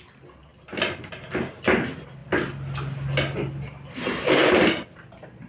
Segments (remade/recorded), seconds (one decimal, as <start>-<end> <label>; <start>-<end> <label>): 0.0-0.5 recorded; 0.5-1.3 remade; 1.3-5.5 recorded

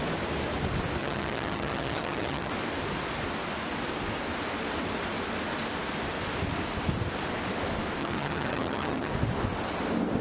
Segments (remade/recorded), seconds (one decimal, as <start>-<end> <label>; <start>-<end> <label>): 0.0-1.0 recorded; 1.0-2.5 remade; 2.5-8.0 recorded; 8.0-9.1 remade; 9.1-10.2 recorded

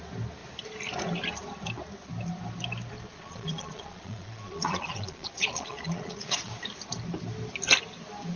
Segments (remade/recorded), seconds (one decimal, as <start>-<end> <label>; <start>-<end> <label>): 0.0-3.1 recorded; 3.1-6.5 remade; 6.5-8.4 recorded

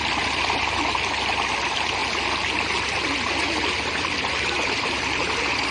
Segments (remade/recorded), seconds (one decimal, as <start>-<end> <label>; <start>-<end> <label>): 0.0-5.7 recorded

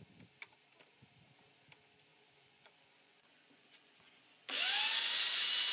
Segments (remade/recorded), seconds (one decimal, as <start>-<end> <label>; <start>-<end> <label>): 0.0-2.1 recorded; 2.1-5.7 remade

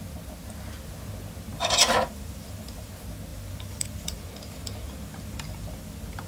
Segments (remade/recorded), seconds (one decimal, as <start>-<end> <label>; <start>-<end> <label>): 0.0-1.5 recorded; 1.5-2.9 remade; 2.9-3.3 recorded; 3.3-6.3 remade

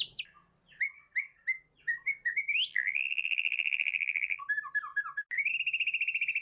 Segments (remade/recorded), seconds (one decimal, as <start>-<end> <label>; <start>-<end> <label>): 0.0-2.7 recorded; 2.7-4.4 remade; 4.4-6.4 recorded